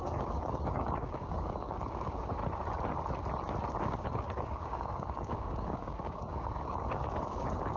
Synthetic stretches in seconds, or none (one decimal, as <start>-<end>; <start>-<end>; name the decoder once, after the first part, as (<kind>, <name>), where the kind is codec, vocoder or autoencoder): 0.0-2.4 (codec, DAC); 3.8-7.8